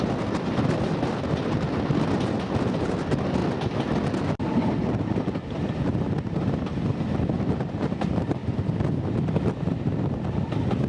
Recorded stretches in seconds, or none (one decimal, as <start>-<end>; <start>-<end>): 0.0-10.9